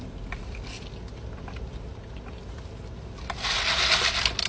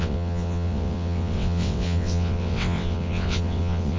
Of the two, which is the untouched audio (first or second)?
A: first